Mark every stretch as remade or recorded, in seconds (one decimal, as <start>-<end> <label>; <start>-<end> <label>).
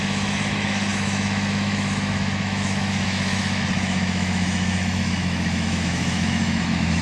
0.0-7.0 remade